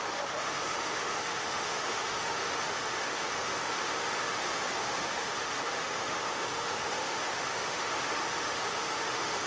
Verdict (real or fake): fake